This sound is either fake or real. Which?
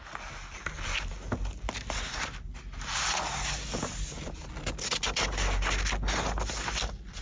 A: real